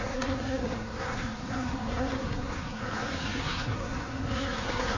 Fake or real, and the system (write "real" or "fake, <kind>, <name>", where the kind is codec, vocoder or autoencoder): fake, codec, SNAC